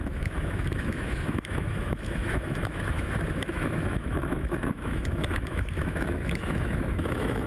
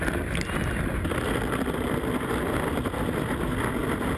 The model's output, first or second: first